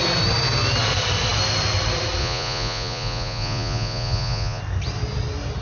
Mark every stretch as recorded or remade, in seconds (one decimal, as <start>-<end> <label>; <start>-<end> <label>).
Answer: 0.0-2.2 recorded; 2.2-4.6 remade; 4.6-5.6 recorded